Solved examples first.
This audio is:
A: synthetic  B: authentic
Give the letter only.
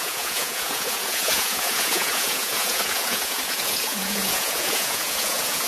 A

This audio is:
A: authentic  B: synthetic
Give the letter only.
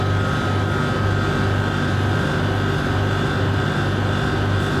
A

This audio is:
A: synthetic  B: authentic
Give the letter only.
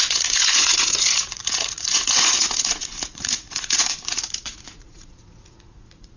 A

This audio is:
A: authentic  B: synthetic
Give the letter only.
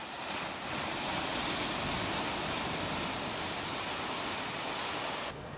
A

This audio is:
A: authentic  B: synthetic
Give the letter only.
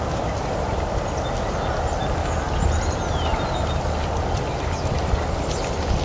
A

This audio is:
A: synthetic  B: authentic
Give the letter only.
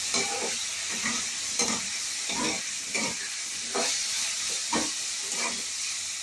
B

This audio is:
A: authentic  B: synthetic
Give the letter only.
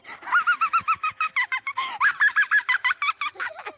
A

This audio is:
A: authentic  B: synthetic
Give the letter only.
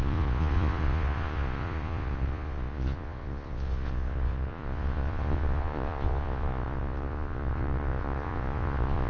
B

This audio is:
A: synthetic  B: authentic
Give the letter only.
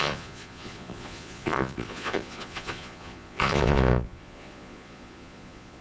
A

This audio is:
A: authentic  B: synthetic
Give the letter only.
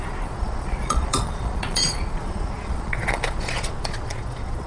B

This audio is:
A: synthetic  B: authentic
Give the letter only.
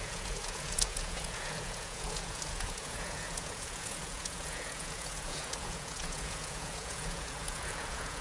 A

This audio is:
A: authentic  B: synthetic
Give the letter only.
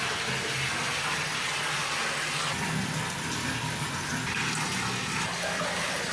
A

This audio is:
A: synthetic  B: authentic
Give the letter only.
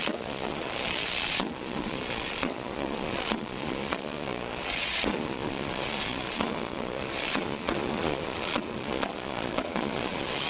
A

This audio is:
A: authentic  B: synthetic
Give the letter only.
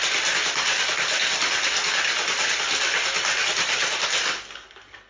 A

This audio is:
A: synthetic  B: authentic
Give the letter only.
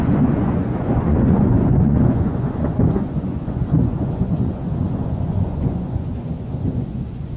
A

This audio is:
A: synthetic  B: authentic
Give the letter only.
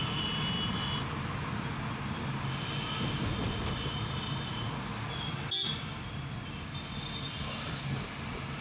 B